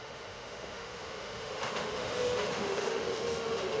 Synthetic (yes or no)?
yes